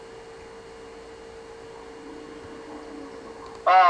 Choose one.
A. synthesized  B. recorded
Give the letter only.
B